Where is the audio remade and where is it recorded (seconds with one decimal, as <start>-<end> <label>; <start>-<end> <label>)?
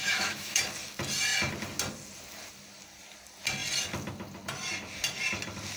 0.0-0.6 remade; 0.6-5.8 recorded